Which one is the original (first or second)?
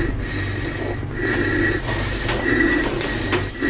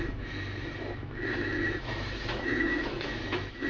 first